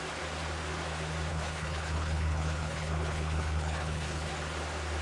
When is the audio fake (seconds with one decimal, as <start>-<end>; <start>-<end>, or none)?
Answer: 1.3-4.3